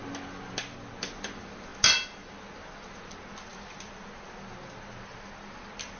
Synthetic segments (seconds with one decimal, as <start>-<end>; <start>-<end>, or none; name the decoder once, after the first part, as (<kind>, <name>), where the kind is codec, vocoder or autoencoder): none